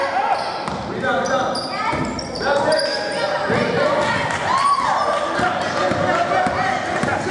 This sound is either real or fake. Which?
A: real